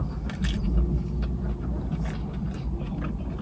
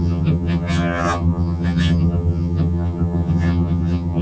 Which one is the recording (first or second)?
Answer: first